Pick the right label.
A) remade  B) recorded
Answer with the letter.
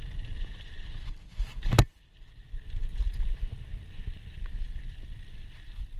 A